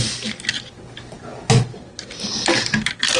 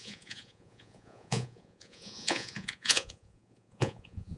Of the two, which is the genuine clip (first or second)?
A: first